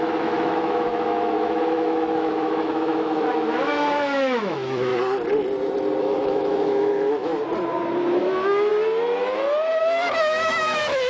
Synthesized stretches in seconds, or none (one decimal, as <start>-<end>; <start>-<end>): 0.0-4.9; 6.0-7.3; 8.2-8.7; 9.8-11.1